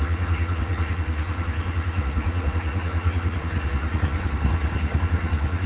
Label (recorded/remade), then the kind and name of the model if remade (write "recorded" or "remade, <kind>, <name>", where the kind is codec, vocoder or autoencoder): remade, vocoder, Vocos